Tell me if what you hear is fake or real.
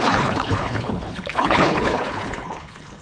fake